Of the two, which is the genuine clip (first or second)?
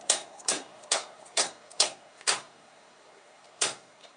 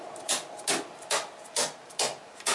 second